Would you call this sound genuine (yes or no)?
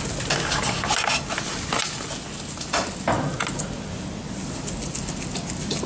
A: yes